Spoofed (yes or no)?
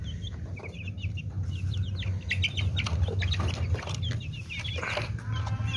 no